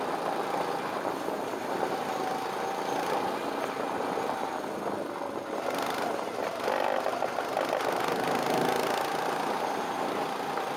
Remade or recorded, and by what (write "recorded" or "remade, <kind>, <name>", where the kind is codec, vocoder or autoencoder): recorded